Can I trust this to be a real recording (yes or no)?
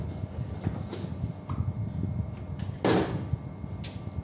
yes